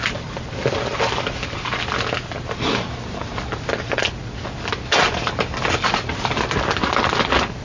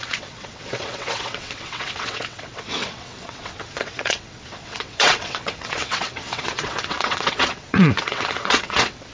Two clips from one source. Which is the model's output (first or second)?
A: second